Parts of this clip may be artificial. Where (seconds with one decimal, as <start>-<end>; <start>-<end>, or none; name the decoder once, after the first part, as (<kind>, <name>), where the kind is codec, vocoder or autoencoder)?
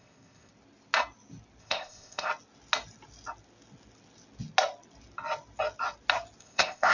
0.0-0.5 (codec, ZipCodec); 1.6-2.3; 6.4-6.9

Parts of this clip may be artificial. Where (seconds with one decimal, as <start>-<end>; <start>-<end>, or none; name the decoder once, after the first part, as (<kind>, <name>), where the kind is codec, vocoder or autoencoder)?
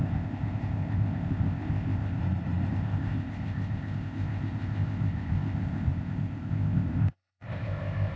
0.0-2.2 (codec, ZipCodec); 2.7-8.2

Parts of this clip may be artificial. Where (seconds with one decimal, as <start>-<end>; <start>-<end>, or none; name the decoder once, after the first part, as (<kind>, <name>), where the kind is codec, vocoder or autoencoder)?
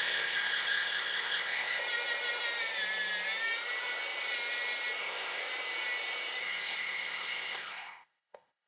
0.0-1.8 (codec, ZipCodec); 5.0-5.4; 6.4-8.7